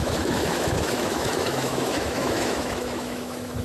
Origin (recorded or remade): remade